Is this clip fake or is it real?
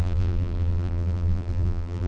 fake